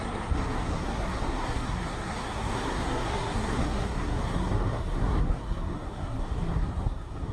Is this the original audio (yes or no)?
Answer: no